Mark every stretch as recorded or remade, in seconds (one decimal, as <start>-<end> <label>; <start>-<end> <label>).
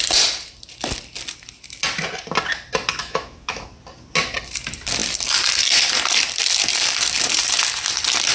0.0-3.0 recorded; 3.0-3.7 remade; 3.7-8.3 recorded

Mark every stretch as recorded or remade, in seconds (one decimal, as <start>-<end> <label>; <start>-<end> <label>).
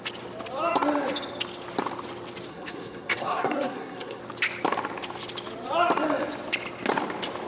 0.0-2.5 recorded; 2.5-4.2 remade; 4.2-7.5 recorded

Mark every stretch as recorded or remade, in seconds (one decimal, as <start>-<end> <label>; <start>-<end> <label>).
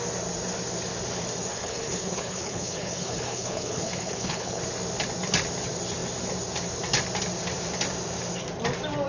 0.0-1.5 recorded; 1.5-4.6 remade; 4.6-9.1 recorded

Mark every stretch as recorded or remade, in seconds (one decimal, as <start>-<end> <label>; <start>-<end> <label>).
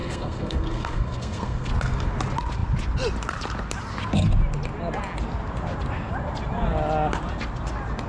0.0-1.7 remade; 1.7-8.1 recorded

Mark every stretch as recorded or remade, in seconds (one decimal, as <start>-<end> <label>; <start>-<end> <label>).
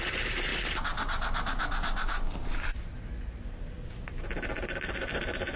0.0-5.6 recorded